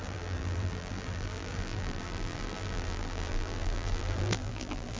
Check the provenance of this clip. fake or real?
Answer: fake